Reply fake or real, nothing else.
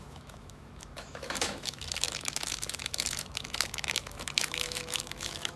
fake